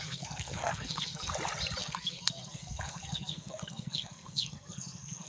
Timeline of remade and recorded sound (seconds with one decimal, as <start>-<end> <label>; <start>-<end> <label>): 0.0-1.3 remade; 1.3-1.8 recorded; 1.8-5.3 remade